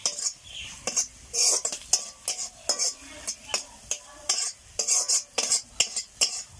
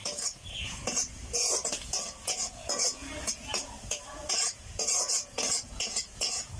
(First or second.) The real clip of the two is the first